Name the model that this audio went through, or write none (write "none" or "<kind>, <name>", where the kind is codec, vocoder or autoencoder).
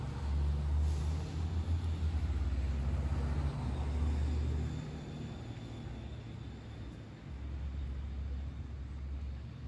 none